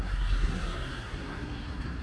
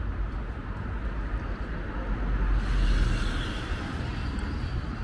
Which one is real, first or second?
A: second